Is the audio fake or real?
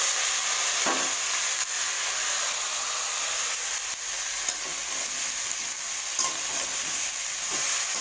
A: real